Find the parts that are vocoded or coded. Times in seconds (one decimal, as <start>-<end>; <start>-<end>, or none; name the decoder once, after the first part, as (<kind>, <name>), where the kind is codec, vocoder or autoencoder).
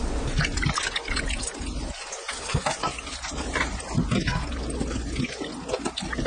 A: none